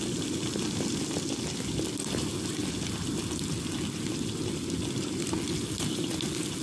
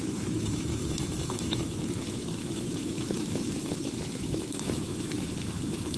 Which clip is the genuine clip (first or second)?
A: first